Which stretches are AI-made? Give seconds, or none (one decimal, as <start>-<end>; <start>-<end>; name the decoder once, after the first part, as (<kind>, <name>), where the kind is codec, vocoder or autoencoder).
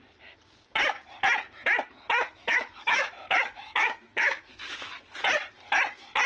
2.2-4.9 (autoencoder, DAC-VAE)